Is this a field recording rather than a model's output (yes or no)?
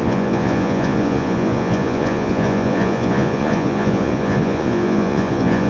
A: no